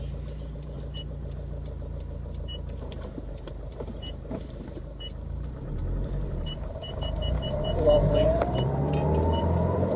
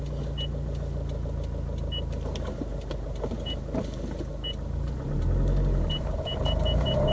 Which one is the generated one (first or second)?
first